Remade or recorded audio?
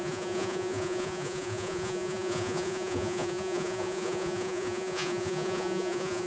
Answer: remade